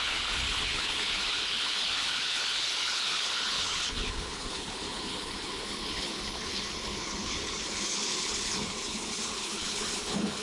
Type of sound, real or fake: fake